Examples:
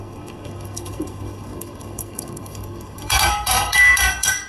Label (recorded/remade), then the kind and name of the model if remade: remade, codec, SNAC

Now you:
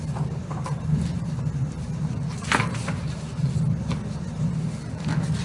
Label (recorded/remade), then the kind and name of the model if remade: recorded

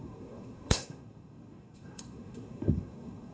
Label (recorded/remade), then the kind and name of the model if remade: remade, codec, SNAC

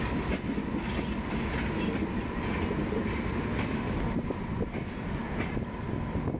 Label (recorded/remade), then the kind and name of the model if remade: recorded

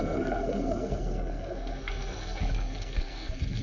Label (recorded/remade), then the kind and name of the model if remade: remade, codec, SNAC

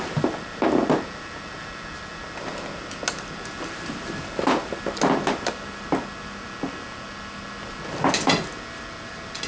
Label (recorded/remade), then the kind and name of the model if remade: recorded